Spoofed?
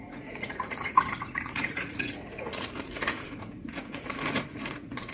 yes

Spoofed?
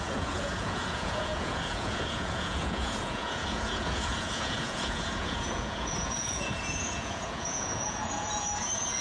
yes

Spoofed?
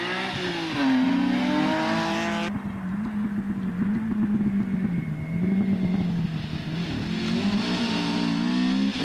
no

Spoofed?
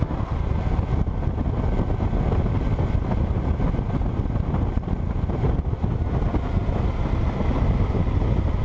no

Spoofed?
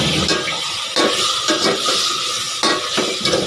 no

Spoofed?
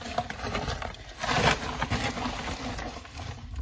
no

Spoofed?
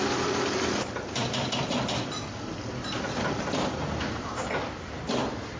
no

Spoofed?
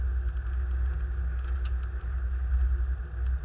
no